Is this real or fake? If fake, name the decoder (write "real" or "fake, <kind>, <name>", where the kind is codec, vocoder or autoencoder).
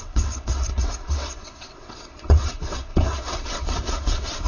fake, vocoder, WaveNeXt